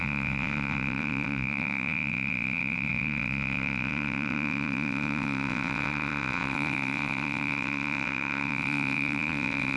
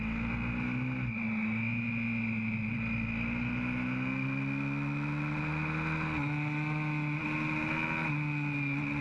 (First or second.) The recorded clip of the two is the second